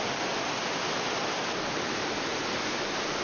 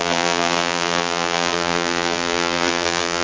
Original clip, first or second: first